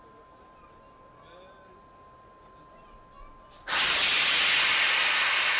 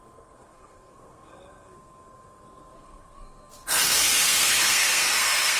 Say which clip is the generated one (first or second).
second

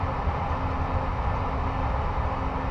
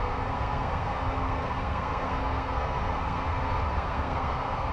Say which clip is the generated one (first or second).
second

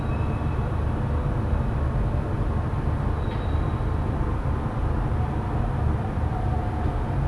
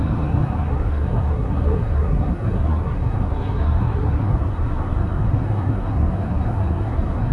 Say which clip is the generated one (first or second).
second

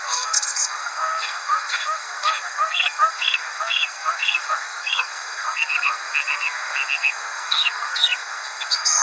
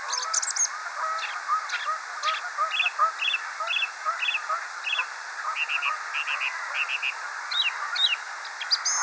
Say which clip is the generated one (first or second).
first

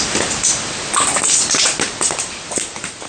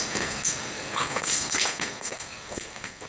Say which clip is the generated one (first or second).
second